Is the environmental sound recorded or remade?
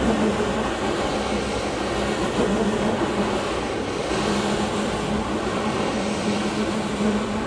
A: recorded